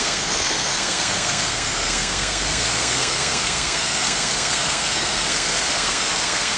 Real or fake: fake